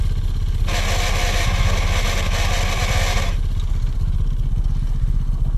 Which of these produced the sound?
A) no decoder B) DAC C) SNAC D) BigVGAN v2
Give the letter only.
A